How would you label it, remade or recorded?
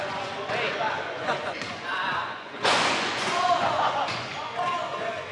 remade